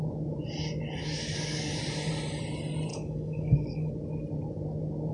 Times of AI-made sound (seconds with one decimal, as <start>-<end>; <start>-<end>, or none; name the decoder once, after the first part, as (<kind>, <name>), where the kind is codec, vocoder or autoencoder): 1.0-1.7 (codec, DAC); 2.9-3.9